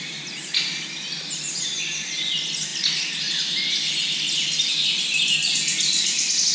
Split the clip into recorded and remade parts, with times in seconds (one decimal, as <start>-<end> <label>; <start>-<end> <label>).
0.0-6.5 recorded

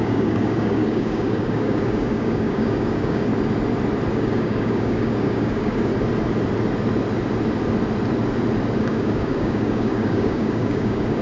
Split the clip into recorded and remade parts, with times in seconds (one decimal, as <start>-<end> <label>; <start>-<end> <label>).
0.0-3.3 remade; 3.3-4.1 recorded; 4.1-5.9 remade; 5.9-8.8 recorded; 8.8-11.2 remade

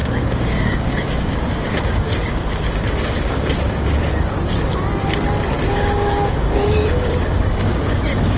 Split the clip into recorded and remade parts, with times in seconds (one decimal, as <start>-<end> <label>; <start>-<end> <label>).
0.0-4.1 remade; 4.1-5.7 recorded; 5.7-7.8 remade; 7.8-8.4 recorded

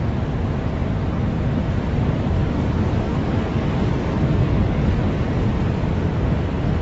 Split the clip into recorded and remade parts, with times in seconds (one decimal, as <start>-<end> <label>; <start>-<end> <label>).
0.0-2.4 recorded; 2.4-5.0 remade; 5.0-6.8 recorded